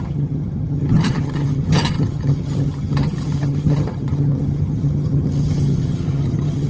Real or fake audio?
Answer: fake